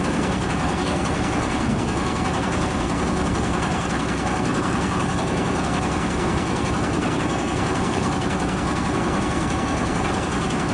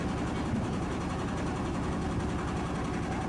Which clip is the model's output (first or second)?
first